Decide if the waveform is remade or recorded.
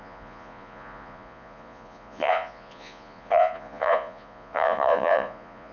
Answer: remade